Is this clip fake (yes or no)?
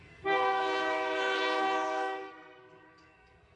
yes